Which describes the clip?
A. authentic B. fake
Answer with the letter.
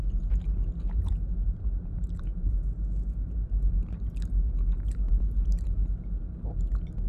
B